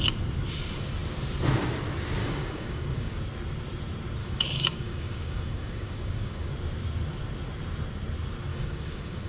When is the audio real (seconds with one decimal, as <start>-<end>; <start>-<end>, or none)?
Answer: 0.0-2.2; 3.2-4.2; 6.5-8.5